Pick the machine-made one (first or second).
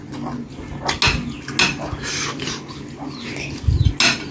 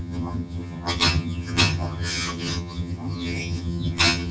second